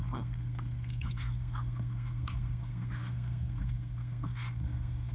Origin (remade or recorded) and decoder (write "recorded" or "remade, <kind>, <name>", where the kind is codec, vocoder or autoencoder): remade, codec, SNAC